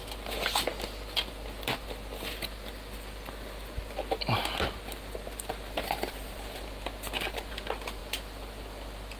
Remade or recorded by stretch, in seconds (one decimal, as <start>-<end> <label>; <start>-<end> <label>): 0.0-9.2 recorded